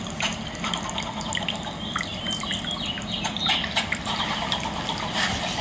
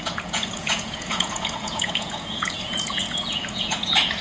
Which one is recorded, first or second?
first